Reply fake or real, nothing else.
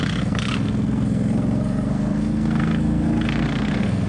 fake